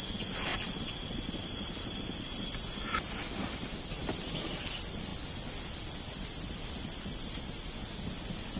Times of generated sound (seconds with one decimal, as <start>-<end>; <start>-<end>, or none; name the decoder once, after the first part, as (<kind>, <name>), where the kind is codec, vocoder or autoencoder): none